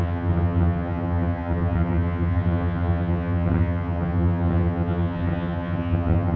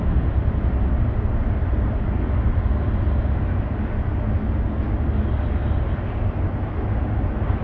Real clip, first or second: second